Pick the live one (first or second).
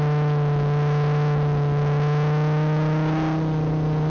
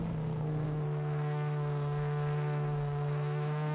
first